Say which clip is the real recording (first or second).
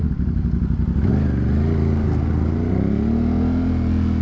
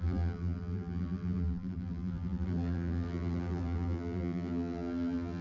first